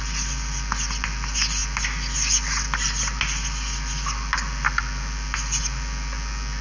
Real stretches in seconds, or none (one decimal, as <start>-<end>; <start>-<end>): 0.0-6.6